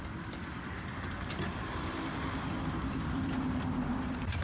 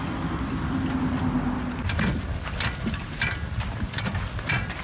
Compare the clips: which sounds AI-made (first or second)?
first